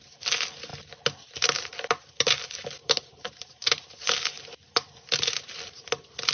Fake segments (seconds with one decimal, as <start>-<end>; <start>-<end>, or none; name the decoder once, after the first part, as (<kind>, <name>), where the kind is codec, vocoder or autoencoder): 2.8-4.1 (vocoder, BigVGAN v2)